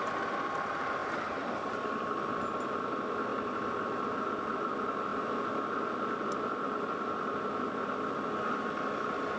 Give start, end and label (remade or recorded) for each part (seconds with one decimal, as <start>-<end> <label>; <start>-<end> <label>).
0.0-1.0 recorded; 1.0-1.6 remade; 1.6-9.4 recorded